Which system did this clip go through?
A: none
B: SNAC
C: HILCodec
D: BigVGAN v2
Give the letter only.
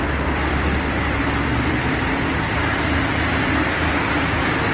D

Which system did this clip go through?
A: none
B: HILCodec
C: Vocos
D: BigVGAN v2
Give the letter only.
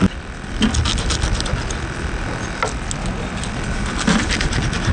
A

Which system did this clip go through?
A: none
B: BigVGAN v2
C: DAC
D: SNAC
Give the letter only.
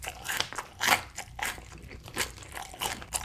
B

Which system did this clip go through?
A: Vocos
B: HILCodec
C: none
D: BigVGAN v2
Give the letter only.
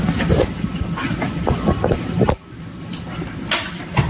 D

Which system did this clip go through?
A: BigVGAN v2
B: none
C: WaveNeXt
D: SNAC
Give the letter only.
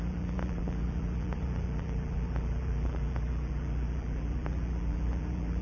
A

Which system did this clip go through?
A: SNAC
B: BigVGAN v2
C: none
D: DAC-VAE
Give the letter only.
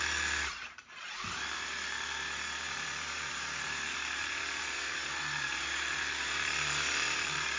B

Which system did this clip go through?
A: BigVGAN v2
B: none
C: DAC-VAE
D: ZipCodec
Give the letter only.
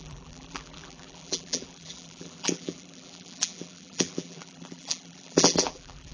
A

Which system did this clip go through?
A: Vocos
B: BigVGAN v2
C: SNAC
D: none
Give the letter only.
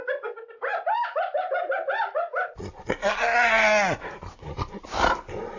D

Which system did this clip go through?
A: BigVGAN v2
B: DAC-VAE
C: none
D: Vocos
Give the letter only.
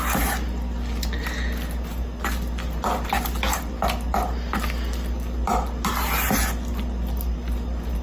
C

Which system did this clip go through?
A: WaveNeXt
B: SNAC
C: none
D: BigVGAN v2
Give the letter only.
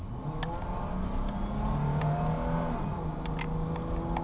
C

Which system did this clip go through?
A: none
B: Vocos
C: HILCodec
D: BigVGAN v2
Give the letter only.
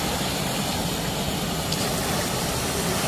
D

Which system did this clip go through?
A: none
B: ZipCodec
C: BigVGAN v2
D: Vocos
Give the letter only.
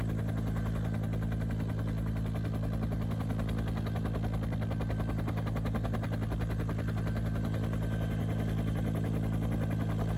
A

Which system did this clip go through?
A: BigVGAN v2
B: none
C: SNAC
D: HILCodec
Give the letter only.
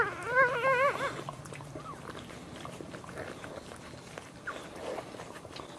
B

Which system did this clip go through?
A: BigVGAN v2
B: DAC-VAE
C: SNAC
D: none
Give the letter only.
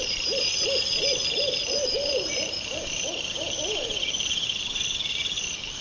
A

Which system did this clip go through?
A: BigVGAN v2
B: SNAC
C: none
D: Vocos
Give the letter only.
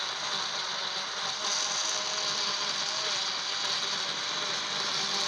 C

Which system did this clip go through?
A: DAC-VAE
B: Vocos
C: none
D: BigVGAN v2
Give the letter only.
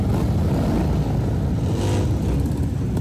C